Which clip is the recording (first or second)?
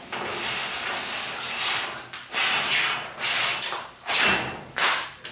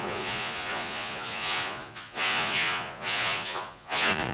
first